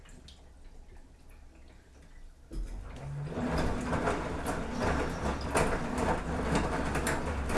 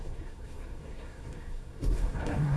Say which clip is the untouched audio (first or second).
first